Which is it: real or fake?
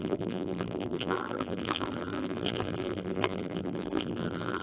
fake